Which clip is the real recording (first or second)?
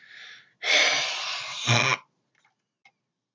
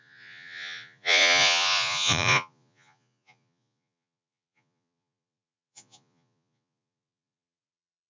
first